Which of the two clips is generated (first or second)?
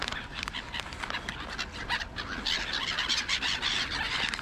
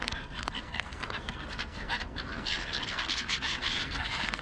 second